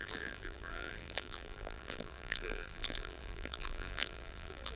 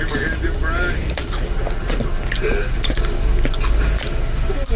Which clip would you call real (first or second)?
second